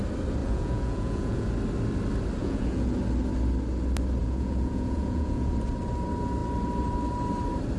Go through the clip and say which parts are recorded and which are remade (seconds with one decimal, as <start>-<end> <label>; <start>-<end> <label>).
0.0-0.4 recorded; 0.4-1.5 remade; 1.5-2.4 recorded; 2.4-3.0 remade; 3.0-4.2 recorded; 4.2-5.5 remade; 5.5-7.8 recorded